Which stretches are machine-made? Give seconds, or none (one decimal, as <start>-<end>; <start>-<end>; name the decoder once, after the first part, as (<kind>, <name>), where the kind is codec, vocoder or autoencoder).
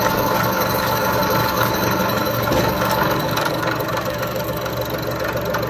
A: 0.0-4.7 (codec, DAC)